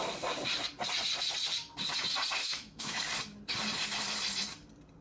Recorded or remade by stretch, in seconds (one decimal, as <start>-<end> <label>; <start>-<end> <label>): 0.0-2.4 recorded; 2.4-3.0 remade; 3.0-5.0 recorded